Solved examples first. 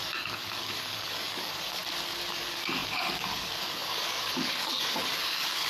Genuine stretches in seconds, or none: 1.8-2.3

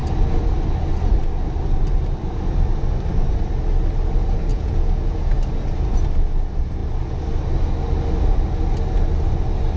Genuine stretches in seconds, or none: 0.0-4.5; 5.1-9.8